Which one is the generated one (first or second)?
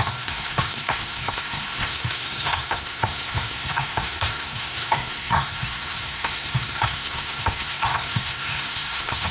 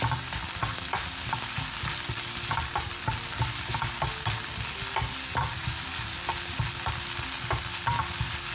first